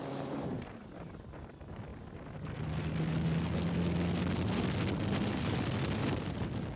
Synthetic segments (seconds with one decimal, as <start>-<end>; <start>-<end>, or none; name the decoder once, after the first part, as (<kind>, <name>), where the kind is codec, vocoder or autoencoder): 0.0-1.9 (vocoder, BigVGAN v2); 6.0-6.8